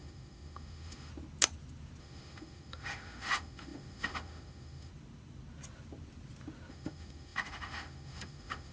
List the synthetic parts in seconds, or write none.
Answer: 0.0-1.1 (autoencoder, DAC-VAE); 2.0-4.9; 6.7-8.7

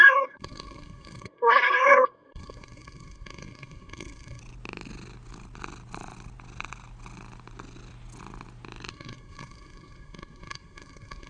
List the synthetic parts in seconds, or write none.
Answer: 0.0-4.4 (codec, SNAC); 8.9-11.3

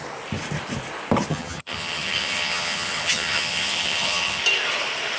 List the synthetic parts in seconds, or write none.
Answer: 1.3-4.4 (vocoder, HiFi-GAN)

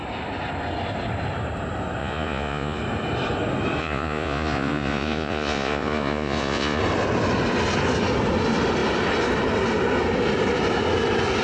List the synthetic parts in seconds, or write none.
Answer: 2.0-2.8 (vocoder, Vocos); 3.8-6.8

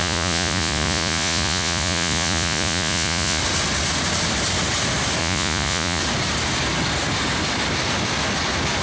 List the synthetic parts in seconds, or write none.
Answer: 0.0-3.4 (vocoder, Vocos); 5.2-6.0